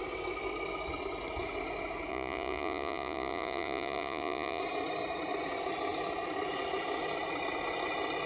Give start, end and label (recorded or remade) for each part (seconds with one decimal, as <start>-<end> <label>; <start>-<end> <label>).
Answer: 0.0-2.1 recorded; 2.1-4.6 remade; 4.6-8.3 recorded